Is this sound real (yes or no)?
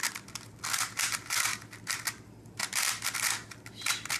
yes